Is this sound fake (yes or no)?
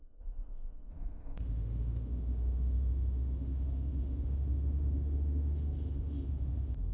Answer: yes